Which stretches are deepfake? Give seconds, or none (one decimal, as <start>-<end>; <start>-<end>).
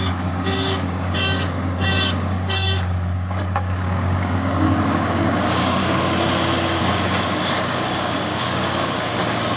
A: 0.0-5.8; 6.8-9.6